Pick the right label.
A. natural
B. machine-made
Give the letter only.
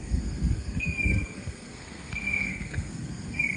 B